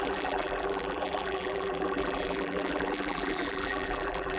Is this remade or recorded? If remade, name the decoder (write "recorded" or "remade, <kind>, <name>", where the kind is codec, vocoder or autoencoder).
remade, vocoder, BigVGAN v2